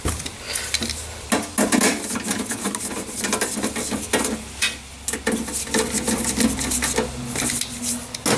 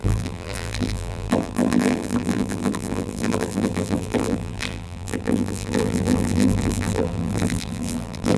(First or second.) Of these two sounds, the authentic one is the first